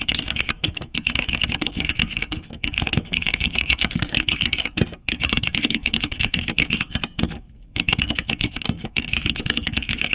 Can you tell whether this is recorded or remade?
remade